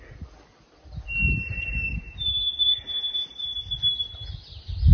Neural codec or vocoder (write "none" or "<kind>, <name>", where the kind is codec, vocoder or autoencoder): none